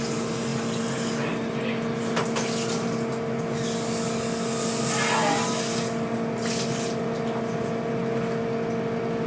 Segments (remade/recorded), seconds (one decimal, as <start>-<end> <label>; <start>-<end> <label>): 0.0-9.3 recorded